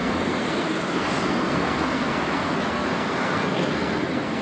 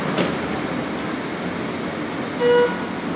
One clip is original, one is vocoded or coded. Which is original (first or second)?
second